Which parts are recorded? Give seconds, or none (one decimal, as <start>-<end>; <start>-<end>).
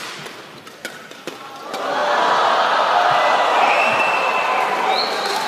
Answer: 0.0-5.5